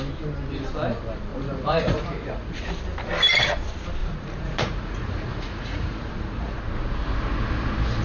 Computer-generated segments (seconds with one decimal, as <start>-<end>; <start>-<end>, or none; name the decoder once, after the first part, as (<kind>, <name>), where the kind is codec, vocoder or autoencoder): 1.3-2.7 (vocoder, Vocos); 4.0-6.6